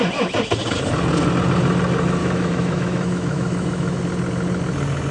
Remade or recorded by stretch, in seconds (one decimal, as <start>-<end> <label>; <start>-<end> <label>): 0.0-2.2 recorded; 2.2-4.0 remade; 4.0-5.1 recorded